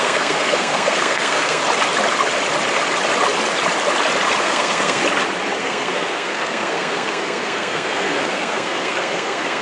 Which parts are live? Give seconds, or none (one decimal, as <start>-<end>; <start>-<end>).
1.6-4.4; 5.0-5.6

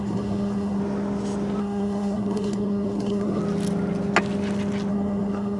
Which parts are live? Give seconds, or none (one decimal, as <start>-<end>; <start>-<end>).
0.8-1.6; 3.4-4.9

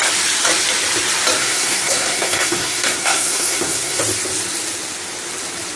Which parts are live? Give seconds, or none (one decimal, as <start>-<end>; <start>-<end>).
0.0-1.4; 4.0-5.8

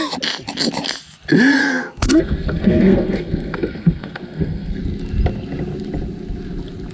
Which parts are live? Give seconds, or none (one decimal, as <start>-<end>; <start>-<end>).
0.0-1.6; 4.8-6.9

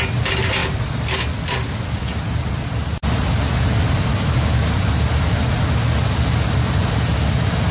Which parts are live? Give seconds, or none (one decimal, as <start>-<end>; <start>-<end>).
0.0-7.7